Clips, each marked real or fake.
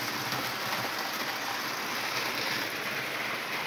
real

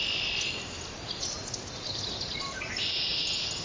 real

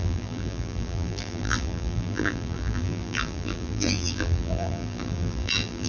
fake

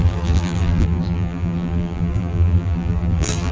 fake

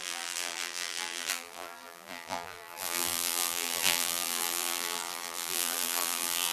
fake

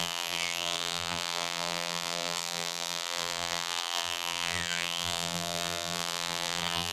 fake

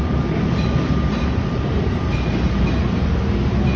fake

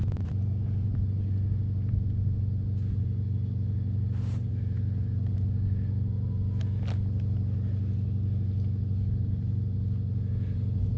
real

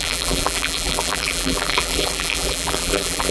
fake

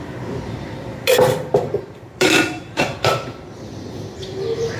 fake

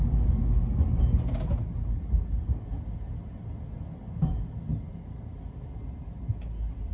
real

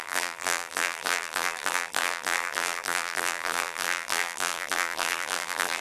fake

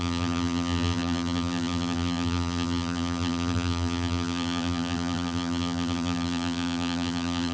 fake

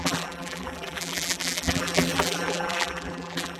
fake